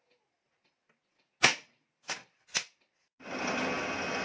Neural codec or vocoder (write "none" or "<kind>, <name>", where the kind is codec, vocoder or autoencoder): none